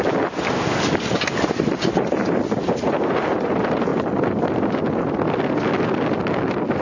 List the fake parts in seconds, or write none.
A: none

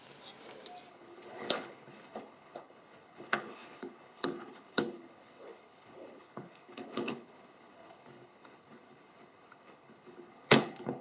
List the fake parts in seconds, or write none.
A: 0.9-11.0 (codec, HILCodec)

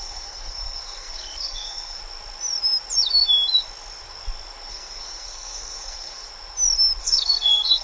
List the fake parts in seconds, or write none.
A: 0.0-2.0 (codec, SNAC); 4.7-6.3; 7.0-7.8

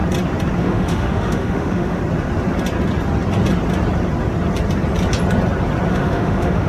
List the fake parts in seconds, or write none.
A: 0.6-2.0 (autoencoder, DAC-VAE); 5.9-6.7

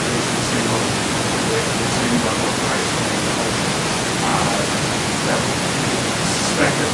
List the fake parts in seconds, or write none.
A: 0.0-2.8 (vocoder, Vocos); 3.8-4.3; 4.8-6.9

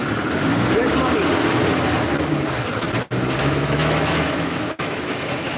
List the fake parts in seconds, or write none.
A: 3.4-5.6 (autoencoder, DAC-VAE)

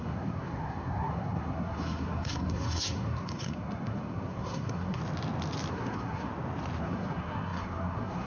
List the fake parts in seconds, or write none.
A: 0.0-5.0 (codec, SNAC); 5.7-6.3; 6.8-8.3